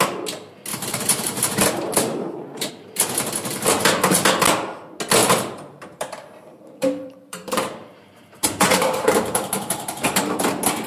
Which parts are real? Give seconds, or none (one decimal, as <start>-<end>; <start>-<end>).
0.0-0.7; 2.7-5.2; 10.4-10.9